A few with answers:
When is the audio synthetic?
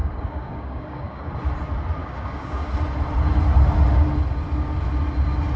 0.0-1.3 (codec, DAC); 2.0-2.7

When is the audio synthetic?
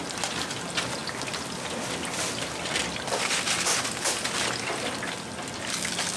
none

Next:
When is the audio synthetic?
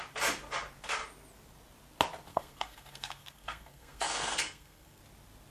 2.3-5.0 (codec, SNAC)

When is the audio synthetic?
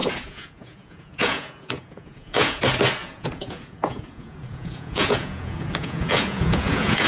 0.0-2.6 (vocoder, Vocos); 3.0-7.1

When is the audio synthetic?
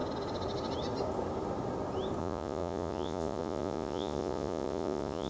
2.2-5.3 (vocoder, Vocos)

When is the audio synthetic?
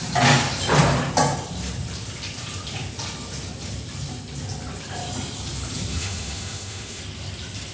5.9-7.0 (autoencoder, DAC-VAE)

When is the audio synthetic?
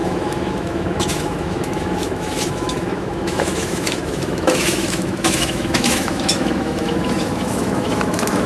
0.0-8.5 (autoencoder, DAC-VAE)